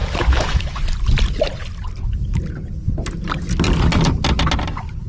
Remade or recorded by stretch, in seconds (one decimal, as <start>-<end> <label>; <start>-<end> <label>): 0.0-0.8 remade; 0.8-5.1 recorded